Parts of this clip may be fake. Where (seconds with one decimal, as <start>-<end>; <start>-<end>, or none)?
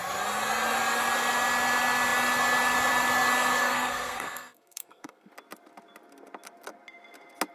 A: 3.6-5.3